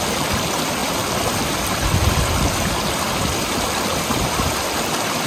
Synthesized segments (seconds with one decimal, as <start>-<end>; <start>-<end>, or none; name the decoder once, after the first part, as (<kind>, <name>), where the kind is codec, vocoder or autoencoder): 0.0-5.3 (vocoder, BigVGAN v2)